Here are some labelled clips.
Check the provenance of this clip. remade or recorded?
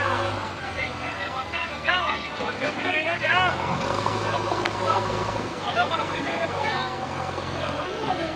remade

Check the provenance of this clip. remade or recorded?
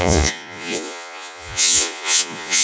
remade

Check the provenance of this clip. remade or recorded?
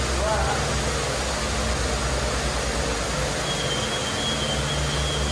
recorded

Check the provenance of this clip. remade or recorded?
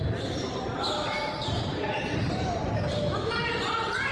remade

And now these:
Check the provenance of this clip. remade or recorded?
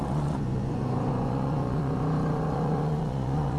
remade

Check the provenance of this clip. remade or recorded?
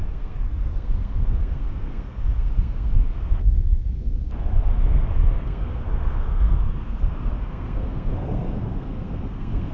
remade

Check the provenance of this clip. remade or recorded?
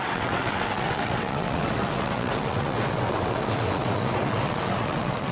remade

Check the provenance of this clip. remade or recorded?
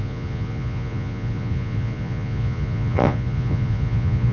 remade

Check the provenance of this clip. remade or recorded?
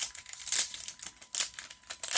recorded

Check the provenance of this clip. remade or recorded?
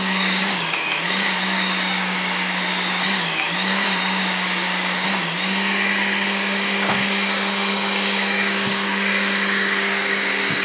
remade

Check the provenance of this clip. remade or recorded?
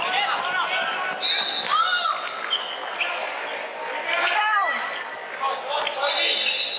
recorded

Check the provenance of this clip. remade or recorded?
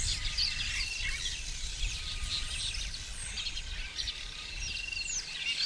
recorded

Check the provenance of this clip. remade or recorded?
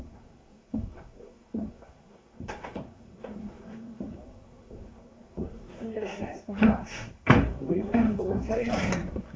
remade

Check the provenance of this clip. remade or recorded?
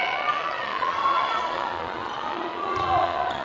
remade